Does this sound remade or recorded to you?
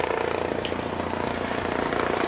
recorded